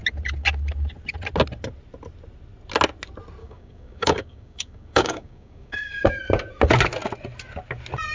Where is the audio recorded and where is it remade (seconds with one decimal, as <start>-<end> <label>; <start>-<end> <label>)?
0.0-3.4 recorded; 3.4-6.2 remade; 6.2-8.1 recorded